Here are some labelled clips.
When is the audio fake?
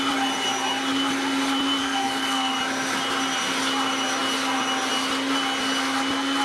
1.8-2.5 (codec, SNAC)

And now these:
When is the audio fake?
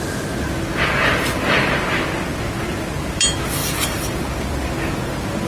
none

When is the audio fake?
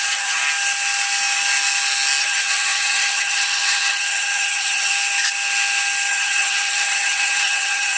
0.0-0.4 (vocoder, HiFi-GAN); 2.2-4.9; 6.1-8.0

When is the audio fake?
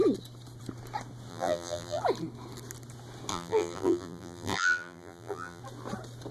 1.3-2.0 (vocoder, BigVGAN v2); 3.3-5.6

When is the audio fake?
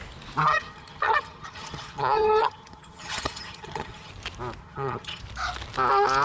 0.5-4.1 (vocoder, HiFi-GAN); 4.6-5.2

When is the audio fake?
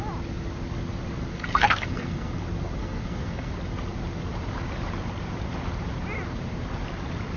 1.3-2.3 (codec, SNAC); 2.8-3.5